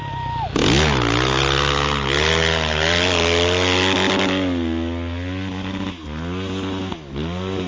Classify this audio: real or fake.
real